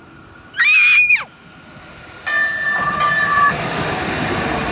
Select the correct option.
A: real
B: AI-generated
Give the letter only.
A